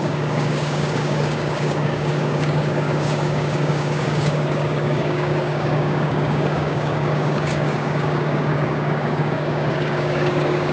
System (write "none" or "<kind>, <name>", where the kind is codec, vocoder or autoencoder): codec, DAC